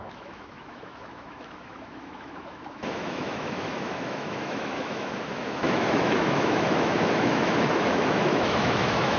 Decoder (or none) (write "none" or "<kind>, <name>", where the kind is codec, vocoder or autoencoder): autoencoder, DAC-VAE